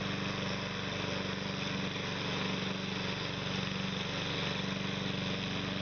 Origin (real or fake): real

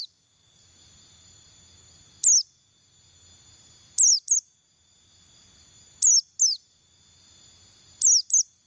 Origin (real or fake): real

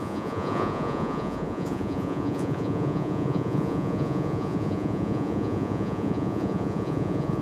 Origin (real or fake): fake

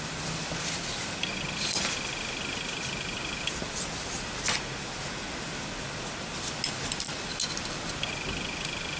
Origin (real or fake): real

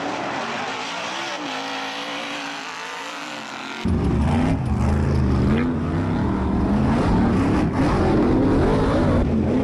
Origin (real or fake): real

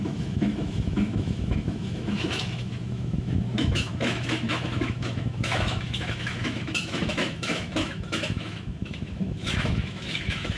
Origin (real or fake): fake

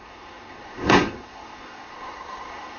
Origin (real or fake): fake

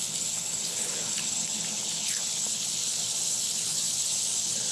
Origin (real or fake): fake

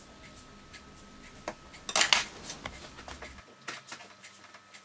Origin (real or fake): real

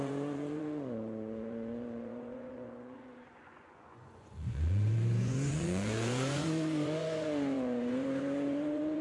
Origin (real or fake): fake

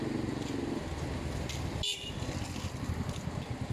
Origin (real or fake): real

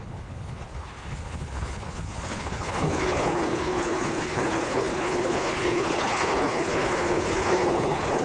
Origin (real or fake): fake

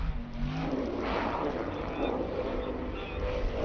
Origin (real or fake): real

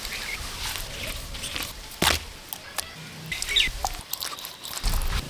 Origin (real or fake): real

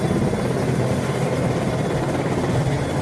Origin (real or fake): real